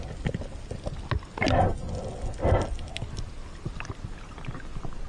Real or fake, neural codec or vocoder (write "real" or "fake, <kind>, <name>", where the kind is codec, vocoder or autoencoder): real